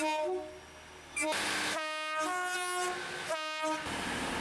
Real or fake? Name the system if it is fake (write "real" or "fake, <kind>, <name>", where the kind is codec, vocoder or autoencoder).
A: real